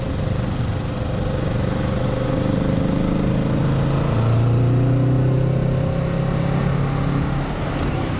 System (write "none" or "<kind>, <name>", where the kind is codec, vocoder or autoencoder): none